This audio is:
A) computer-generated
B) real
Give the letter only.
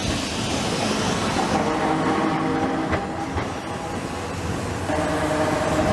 B